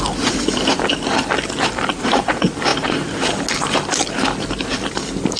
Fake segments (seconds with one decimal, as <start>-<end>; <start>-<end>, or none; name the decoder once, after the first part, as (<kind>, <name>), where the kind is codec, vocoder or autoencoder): 0.7-2.0 (vocoder, BigVGAN v2)